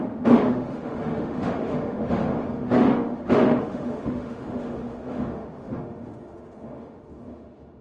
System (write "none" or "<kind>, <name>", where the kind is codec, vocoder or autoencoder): autoencoder, DAC-VAE